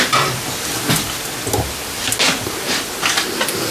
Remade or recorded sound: recorded